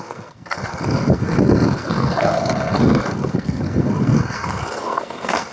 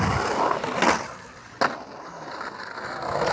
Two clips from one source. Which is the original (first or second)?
second